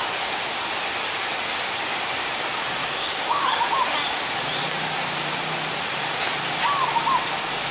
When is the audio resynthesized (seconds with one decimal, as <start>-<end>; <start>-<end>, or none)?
2.8-3.5